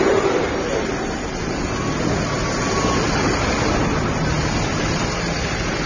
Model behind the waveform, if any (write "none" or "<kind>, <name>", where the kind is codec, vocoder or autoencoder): none